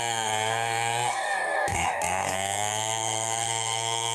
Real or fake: fake